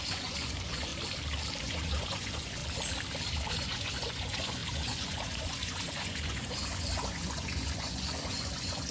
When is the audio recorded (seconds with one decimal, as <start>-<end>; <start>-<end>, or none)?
0.9-1.6; 2.6-3.5